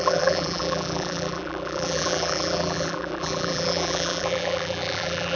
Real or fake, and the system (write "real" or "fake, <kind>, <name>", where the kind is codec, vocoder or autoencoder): fake, vocoder, BigVGAN v2